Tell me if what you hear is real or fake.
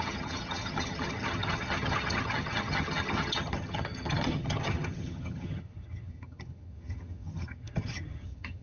fake